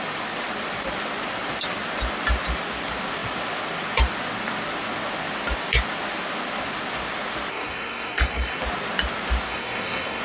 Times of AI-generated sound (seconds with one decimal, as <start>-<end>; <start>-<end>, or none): 7.5-8.6; 9.5-10.2